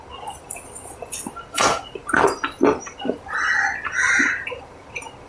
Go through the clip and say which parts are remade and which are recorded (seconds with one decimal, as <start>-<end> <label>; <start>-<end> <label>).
0.0-5.3 remade